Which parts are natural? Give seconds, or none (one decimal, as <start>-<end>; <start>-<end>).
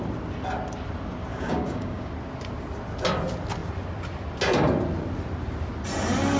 0.0-1.3; 2.1-6.4